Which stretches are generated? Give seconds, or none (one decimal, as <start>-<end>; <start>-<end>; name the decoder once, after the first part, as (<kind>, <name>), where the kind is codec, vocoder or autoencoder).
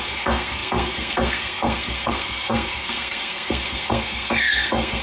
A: 0.0-5.0 (codec, SNAC)